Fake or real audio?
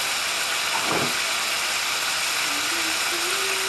real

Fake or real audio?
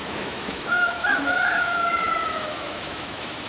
fake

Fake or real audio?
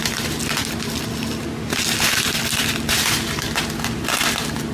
real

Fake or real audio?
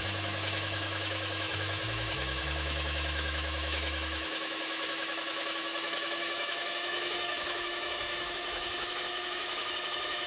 fake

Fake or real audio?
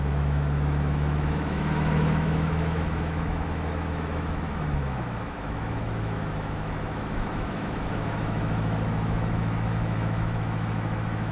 fake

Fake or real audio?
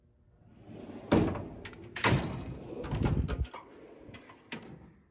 real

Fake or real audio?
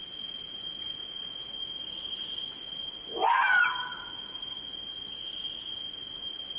real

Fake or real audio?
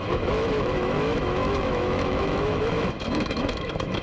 fake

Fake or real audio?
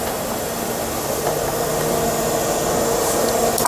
real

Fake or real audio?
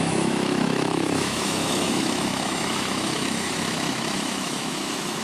fake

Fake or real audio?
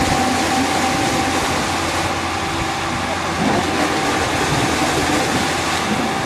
real